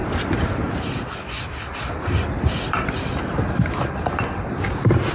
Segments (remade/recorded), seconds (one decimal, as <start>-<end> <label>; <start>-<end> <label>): 0.0-5.1 recorded